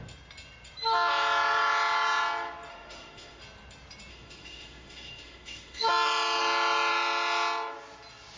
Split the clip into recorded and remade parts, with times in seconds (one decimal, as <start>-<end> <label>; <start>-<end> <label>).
0.0-2.7 recorded; 2.7-3.4 remade; 3.4-4.1 recorded; 4.1-5.9 remade; 5.9-8.4 recorded